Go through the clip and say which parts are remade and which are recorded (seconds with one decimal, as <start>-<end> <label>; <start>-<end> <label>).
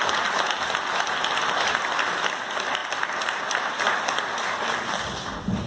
0.0-5.7 recorded